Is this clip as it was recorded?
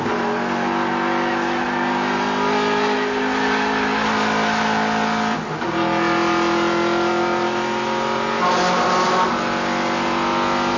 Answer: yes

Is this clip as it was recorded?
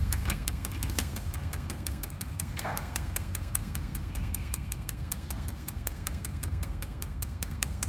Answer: no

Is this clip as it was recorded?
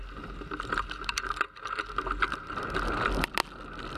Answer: yes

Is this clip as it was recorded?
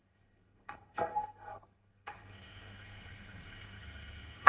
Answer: no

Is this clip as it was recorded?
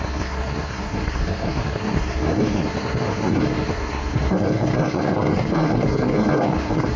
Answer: no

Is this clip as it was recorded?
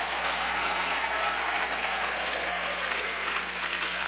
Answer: no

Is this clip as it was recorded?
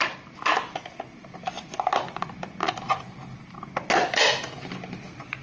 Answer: yes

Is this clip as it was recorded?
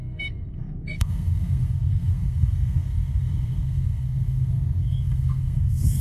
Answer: no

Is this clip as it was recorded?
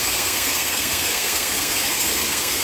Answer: no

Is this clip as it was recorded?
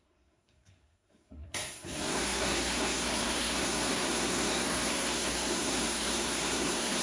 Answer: no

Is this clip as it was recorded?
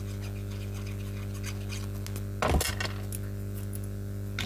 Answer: yes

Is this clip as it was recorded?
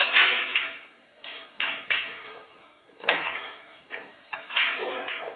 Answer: no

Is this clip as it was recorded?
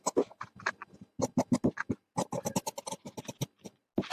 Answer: yes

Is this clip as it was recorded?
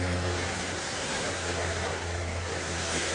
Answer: no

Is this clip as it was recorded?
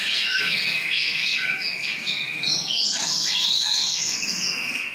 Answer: no